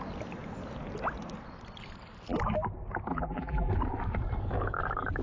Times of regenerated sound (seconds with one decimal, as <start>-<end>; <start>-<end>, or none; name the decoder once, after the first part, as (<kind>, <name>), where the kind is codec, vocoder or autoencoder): 3.1-3.7 (vocoder, BigVGAN v2)